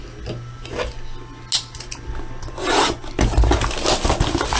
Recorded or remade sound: recorded